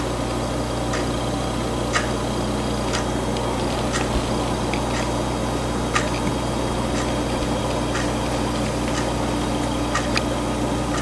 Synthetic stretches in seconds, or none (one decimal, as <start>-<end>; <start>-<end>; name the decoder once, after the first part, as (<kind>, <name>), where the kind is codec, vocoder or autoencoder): none